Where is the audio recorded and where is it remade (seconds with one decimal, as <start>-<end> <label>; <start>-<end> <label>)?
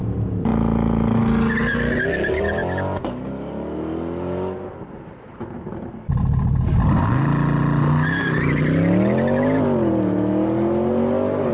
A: 0.0-11.5 recorded